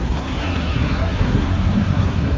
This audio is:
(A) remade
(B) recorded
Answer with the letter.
A